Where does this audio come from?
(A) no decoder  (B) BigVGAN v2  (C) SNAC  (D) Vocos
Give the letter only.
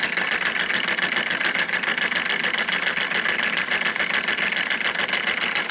A